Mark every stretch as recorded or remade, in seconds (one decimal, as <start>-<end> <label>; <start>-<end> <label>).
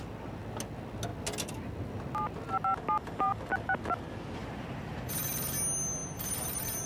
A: 0.0-3.3 recorded; 3.3-4.0 remade; 4.0-4.4 recorded; 4.4-5.1 remade; 5.1-6.0 recorded; 6.0-6.9 remade